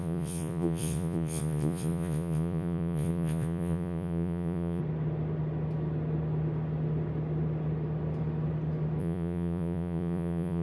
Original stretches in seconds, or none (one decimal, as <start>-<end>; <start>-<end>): 4.8-9.0